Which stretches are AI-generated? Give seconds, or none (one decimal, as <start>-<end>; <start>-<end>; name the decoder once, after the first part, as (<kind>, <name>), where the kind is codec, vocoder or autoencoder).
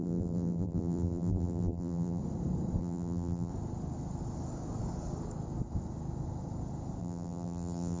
0.0-2.2 (vocoder, BigVGAN v2); 2.8-3.5; 7.0-8.0